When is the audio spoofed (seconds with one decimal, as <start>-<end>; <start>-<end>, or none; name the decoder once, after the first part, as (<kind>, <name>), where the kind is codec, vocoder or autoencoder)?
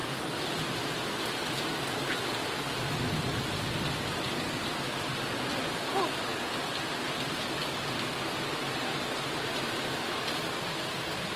none